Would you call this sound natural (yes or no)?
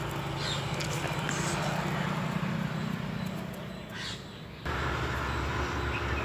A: yes